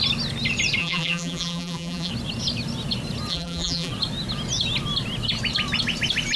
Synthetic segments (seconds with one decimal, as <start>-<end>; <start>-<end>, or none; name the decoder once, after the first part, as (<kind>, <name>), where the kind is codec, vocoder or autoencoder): 0.8-2.1 (vocoder, BigVGAN v2); 3.3-3.9